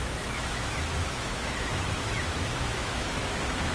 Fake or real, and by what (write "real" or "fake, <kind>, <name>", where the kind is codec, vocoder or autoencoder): fake, autoencoder, DAC-VAE